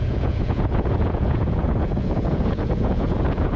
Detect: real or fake fake